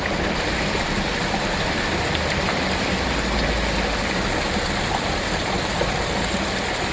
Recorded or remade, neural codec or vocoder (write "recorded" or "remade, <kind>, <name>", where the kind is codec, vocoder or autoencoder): recorded